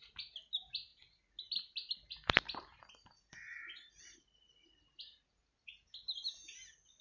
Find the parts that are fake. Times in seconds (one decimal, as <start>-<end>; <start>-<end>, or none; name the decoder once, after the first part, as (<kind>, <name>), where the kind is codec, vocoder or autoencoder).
none